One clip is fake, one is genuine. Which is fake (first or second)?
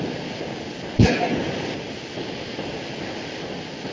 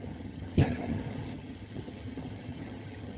second